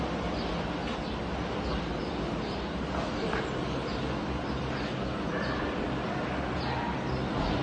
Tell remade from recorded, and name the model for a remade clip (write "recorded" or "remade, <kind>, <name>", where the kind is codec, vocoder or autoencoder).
recorded